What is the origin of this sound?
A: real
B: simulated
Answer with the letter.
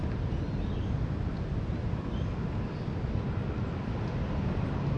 A